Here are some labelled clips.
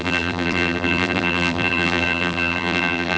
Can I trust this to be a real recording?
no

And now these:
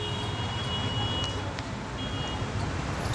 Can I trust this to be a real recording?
yes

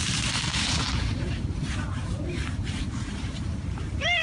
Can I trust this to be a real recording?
no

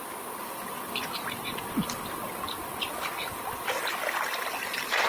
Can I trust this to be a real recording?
no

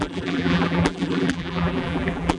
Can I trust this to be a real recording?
no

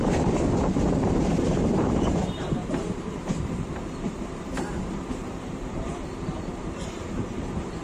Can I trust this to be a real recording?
no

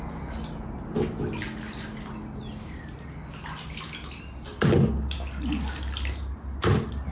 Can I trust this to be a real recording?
yes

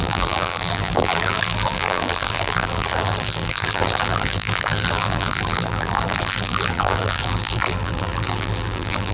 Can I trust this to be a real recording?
no